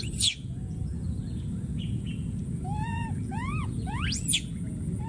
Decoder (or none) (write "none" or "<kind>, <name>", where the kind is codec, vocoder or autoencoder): vocoder, Vocos